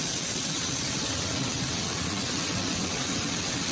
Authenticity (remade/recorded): remade